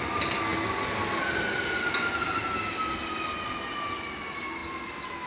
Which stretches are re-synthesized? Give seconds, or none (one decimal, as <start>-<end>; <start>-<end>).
none